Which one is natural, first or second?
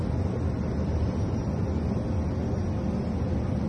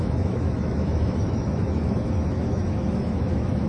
first